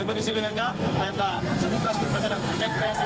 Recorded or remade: remade